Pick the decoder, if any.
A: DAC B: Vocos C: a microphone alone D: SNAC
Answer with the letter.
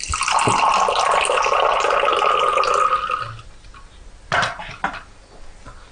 C